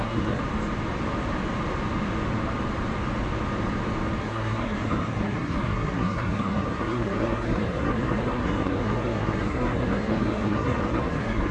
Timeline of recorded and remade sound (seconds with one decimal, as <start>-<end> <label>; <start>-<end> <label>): 0.0-0.4 remade; 0.4-4.2 recorded; 4.2-11.5 remade